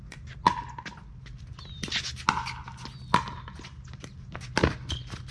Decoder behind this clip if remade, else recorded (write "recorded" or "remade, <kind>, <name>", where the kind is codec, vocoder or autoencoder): recorded